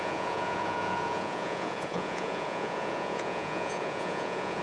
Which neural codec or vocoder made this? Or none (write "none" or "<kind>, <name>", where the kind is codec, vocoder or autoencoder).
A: vocoder, Vocos